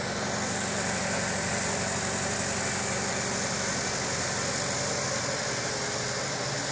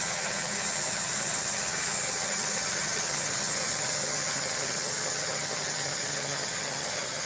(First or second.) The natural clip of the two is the first